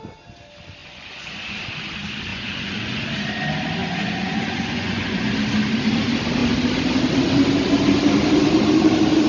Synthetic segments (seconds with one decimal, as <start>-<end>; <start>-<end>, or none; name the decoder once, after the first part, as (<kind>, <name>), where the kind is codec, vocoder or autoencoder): 0.8-1.6 (vocoder, Vocos); 2.3-3.1; 3.8-5.3